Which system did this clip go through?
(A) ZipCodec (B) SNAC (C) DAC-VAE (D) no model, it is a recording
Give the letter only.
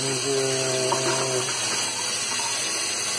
D